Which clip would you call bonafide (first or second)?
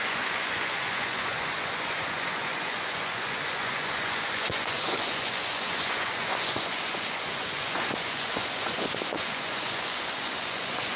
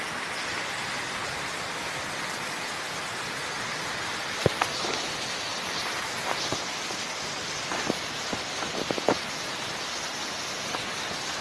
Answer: second